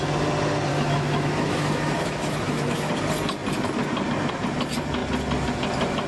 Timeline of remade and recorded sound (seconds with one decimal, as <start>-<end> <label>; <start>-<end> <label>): 0.0-0.7 recorded; 0.7-2.9 remade; 2.9-6.1 recorded